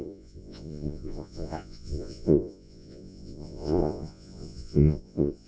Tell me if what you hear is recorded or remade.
remade